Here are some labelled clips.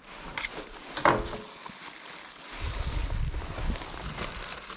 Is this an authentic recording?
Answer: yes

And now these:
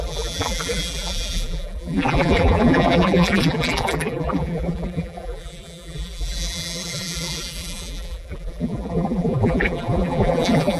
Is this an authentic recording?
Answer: no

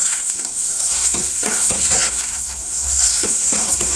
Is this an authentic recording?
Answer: no